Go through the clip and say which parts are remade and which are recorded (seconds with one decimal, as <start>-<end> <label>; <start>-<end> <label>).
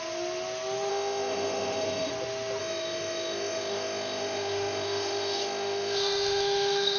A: 0.0-0.9 recorded; 0.9-2.1 remade; 2.1-2.6 recorded; 2.6-7.0 remade